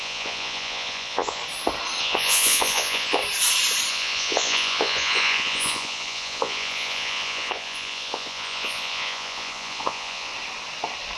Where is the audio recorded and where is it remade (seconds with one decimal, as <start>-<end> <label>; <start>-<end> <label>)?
0.0-1.4 remade; 1.4-2.0 recorded; 2.0-3.2 remade; 3.2-3.9 recorded; 3.9-10.3 remade; 10.3-11.2 recorded